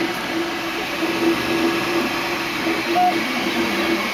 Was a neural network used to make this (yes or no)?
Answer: no